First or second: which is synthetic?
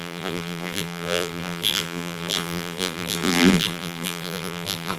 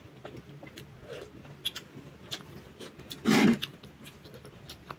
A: first